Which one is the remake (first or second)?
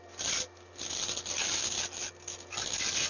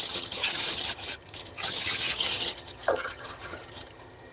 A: second